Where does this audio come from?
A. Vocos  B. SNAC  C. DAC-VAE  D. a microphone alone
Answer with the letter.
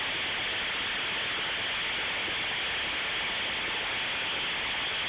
D